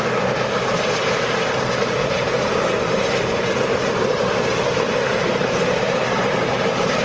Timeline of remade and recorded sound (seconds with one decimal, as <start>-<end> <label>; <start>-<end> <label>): 0.0-0.8 recorded; 0.8-7.0 remade